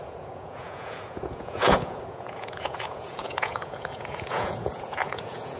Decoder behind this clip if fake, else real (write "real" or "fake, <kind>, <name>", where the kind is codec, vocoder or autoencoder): fake, vocoder, Vocos